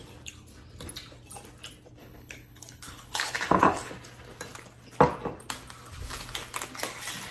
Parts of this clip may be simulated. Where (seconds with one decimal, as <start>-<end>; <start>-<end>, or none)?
2.0-3.9